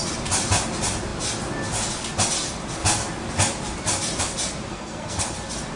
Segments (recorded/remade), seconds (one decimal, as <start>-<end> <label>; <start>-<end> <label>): 0.0-4.7 recorded; 4.7-5.3 remade; 5.3-5.8 recorded